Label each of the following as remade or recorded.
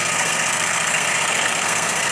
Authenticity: remade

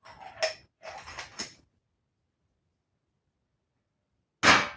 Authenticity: recorded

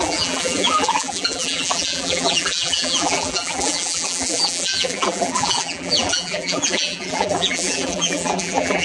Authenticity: remade